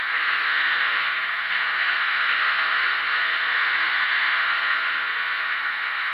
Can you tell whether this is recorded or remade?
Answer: remade